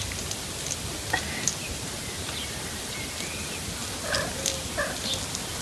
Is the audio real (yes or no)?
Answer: yes